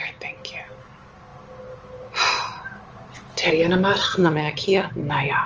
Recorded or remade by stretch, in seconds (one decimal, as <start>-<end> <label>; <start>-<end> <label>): 0.0-4.0 recorded; 4.0-4.9 remade; 4.9-5.5 recorded